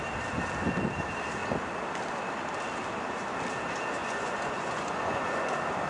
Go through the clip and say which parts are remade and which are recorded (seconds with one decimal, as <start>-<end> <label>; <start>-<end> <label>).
0.0-4.0 recorded; 4.0-5.5 remade; 5.5-5.9 recorded